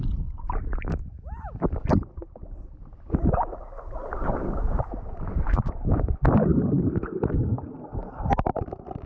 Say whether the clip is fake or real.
real